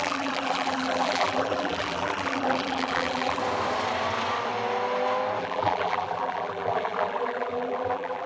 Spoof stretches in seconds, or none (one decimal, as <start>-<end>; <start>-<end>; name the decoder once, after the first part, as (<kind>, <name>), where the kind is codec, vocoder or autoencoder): 0.0-3.4 (vocoder, BigVGAN v2); 5.4-8.3